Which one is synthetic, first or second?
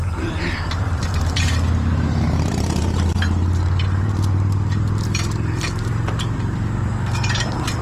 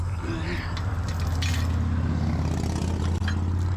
first